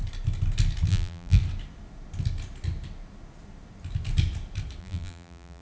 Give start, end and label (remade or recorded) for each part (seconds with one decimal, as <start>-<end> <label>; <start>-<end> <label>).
0.0-0.9 recorded; 0.9-1.4 remade; 1.4-4.8 recorded; 4.8-5.6 remade